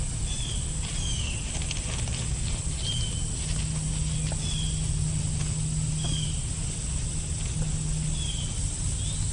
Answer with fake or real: real